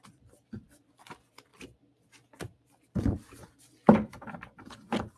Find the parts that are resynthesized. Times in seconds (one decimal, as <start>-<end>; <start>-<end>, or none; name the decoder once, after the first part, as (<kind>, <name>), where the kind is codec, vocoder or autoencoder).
0.0-1.5 (vocoder, BigVGAN v2); 4.6-5.2